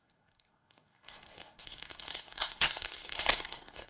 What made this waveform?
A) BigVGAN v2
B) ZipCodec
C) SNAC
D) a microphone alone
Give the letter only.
C